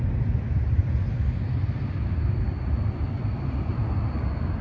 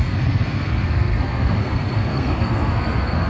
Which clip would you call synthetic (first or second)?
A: second